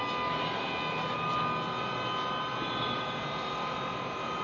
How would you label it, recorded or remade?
recorded